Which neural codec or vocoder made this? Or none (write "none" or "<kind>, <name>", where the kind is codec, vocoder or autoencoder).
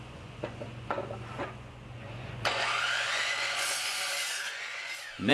vocoder, Vocos